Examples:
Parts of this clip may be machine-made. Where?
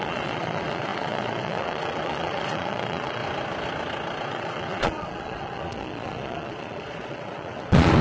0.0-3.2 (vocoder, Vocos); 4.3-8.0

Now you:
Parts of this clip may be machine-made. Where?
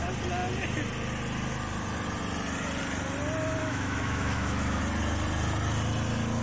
3.6-4.8 (autoencoder, DAC-VAE)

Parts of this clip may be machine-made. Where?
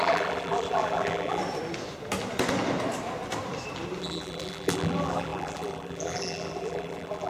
0.0-1.4 (vocoder, BigVGAN v2); 4.0-7.3